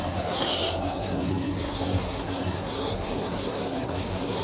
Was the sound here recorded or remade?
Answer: remade